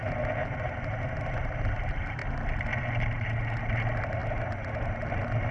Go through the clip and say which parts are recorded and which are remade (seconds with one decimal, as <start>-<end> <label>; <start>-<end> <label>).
0.0-5.5 recorded